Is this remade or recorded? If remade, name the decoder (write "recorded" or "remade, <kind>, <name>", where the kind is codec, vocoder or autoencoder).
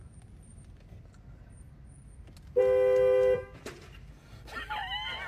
recorded